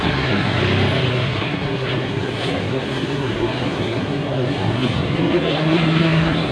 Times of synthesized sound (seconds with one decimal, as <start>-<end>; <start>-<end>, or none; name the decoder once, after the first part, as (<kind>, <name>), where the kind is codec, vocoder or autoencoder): 0.0-0.6 (codec, SNAC); 1.1-6.5